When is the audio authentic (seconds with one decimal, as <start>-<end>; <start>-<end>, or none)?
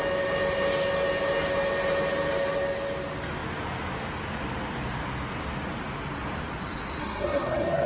0.0-7.0